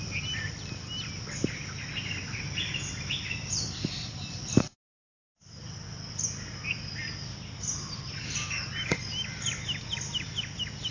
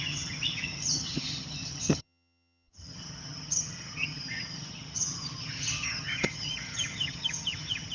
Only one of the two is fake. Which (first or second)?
second